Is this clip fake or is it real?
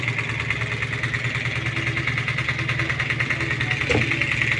real